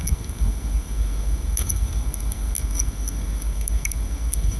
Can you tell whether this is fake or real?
fake